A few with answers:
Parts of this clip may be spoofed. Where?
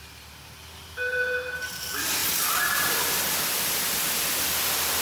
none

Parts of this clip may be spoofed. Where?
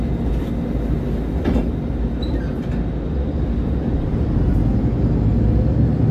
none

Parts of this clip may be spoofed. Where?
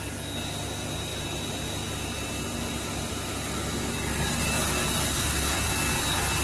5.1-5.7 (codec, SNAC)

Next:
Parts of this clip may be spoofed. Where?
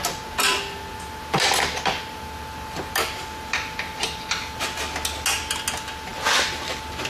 none